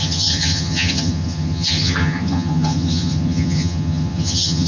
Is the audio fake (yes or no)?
yes